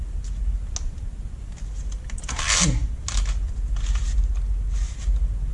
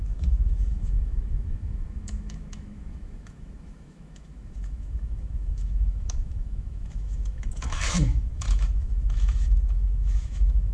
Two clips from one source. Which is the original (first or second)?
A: first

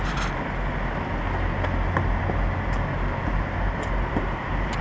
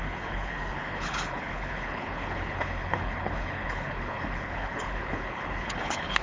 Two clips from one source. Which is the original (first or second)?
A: first